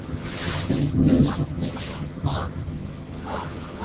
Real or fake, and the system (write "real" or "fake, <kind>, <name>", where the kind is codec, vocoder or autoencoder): fake, vocoder, HiFi-GAN